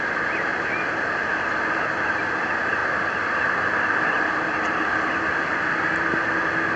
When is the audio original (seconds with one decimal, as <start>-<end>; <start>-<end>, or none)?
0.0-6.8